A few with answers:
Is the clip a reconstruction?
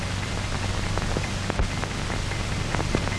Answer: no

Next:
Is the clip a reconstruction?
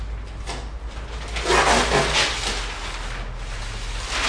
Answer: no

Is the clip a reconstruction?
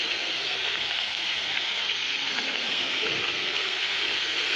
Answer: yes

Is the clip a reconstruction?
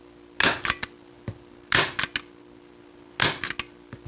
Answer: no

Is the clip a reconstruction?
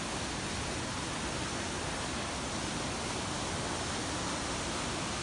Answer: no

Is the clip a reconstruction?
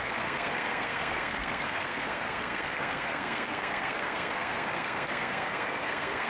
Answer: yes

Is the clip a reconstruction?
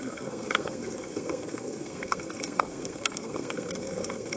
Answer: yes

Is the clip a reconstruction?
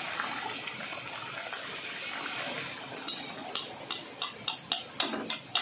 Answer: no